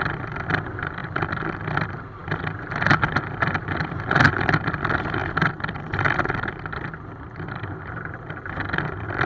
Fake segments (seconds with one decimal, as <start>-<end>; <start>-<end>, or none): 0.0-9.3